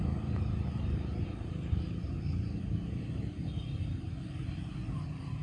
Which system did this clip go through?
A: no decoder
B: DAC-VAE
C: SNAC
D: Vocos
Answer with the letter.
A